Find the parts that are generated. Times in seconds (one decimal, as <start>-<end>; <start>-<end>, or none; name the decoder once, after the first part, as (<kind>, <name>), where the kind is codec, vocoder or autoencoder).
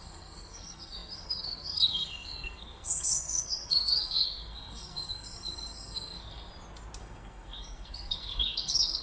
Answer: 0.0-6.5 (codec, SNAC); 7.0-9.0